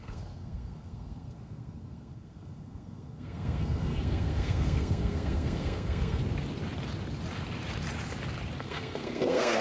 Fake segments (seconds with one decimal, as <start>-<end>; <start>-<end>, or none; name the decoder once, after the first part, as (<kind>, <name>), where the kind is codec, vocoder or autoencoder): 0.0-6.2 (codec, SNAC); 8.6-9.6